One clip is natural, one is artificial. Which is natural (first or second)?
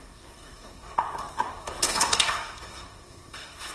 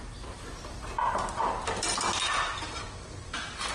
second